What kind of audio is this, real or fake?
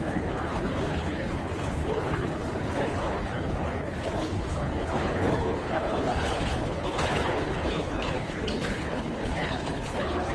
fake